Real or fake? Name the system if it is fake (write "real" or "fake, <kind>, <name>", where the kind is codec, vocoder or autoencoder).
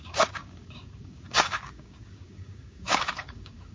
fake, codec, DAC